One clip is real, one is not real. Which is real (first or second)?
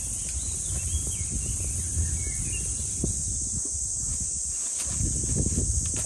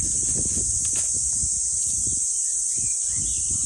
first